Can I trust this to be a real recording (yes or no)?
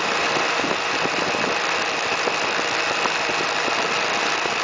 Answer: yes